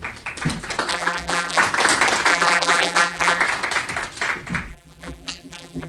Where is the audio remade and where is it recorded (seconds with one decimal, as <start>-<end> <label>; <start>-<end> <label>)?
0.0-0.9 recorded; 0.9-1.6 remade; 1.6-2.3 recorded; 2.3-3.4 remade; 3.4-4.7 recorded; 4.7-5.9 remade